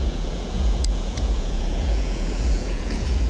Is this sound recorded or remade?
remade